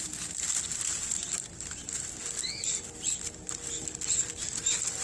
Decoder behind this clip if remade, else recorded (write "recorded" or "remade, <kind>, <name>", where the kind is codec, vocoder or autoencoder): recorded